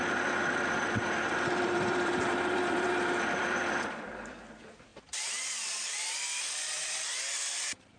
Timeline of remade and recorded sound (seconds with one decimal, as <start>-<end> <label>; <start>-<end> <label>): 0.0-4.9 remade; 4.9-6.1 recorded; 6.1-8.0 remade